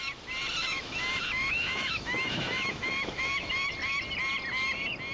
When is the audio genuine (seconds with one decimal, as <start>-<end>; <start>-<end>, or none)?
0.0-0.6; 3.7-5.1